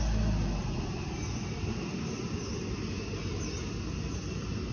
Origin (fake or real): real